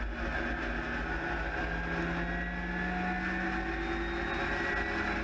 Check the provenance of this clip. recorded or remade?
recorded